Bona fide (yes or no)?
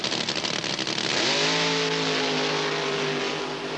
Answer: yes